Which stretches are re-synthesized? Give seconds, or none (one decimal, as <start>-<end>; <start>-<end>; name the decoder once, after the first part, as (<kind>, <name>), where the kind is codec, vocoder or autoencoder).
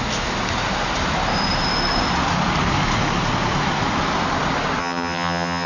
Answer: 4.8-5.7 (vocoder, HiFi-GAN)